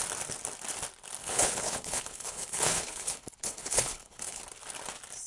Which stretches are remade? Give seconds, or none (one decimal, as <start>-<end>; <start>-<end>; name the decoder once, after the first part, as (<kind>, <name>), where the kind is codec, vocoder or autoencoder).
1.2-4.4 (codec, HILCodec)